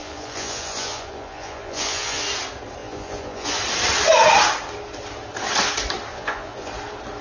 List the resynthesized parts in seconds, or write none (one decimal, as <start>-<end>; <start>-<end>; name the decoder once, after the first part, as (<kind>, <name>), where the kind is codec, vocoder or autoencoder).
0.0-2.2 (vocoder, Vocos); 2.8-3.6; 6.1-6.7